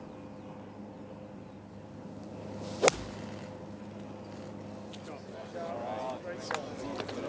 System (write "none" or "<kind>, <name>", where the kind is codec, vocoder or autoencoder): none